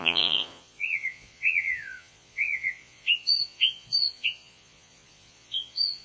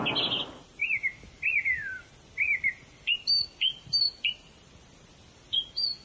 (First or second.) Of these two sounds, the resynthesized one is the first